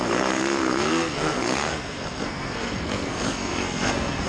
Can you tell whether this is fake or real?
fake